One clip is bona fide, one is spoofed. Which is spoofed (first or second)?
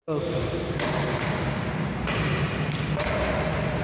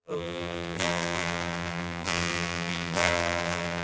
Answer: second